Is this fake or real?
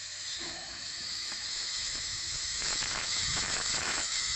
fake